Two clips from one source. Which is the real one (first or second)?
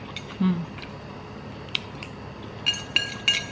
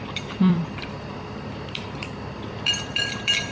first